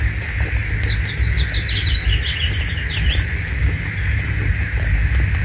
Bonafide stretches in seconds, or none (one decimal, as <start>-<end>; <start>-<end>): 0.0-5.4